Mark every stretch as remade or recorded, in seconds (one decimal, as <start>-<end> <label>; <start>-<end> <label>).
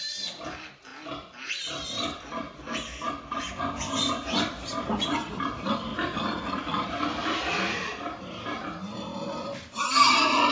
0.0-10.5 recorded